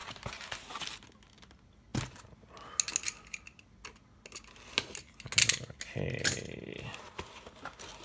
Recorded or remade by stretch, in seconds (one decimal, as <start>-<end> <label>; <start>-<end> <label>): 0.0-8.0 recorded